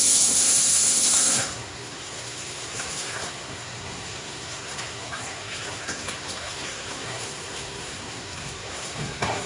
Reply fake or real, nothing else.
fake